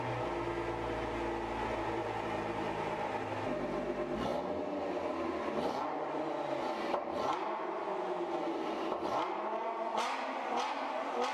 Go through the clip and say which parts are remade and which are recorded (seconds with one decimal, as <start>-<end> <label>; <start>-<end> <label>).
0.0-2.0 recorded; 2.0-2.8 remade; 2.8-11.3 recorded